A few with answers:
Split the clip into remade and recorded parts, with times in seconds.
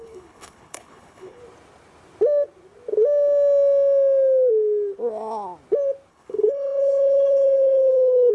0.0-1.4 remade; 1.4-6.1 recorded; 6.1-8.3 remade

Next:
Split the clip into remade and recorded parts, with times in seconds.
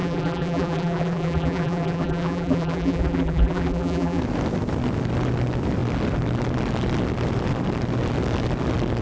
0.0-4.2 remade; 4.2-9.0 recorded